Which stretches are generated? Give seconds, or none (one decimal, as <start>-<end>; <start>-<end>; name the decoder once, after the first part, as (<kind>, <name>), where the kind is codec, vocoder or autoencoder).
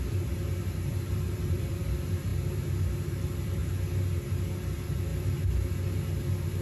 0.0-2.3 (vocoder, BigVGAN v2); 3.2-3.6; 4.2-5.1